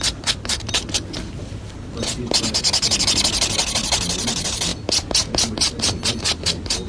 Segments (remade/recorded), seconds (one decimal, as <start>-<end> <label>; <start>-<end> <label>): 0.0-6.9 recorded